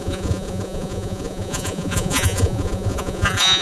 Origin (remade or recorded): remade